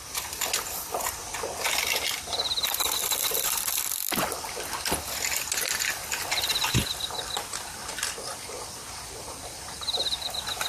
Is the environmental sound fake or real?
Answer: fake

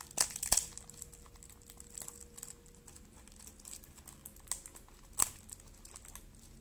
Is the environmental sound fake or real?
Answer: real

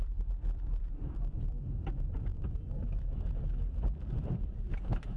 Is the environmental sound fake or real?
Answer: fake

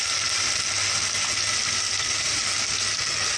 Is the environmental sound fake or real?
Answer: real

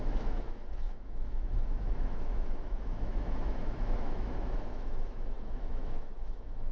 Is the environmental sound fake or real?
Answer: fake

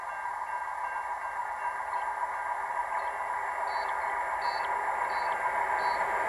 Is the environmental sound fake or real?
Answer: real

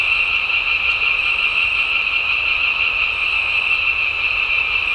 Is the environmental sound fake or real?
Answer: real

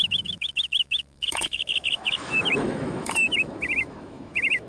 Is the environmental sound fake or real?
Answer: fake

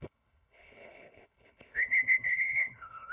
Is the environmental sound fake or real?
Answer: fake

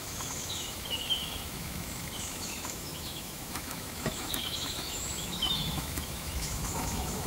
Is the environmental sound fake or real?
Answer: fake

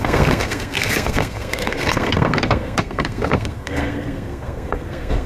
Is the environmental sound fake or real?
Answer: fake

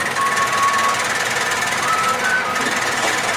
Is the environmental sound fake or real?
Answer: real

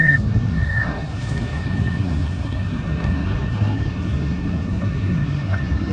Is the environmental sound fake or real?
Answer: fake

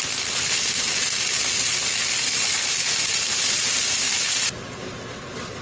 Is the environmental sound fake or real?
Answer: fake